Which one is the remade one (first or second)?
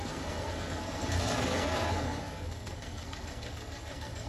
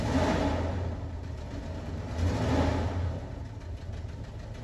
first